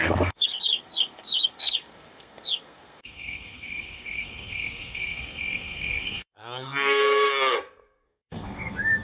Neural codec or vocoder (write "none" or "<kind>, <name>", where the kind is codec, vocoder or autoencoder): codec, SNAC